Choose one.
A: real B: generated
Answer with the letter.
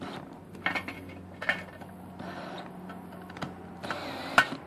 B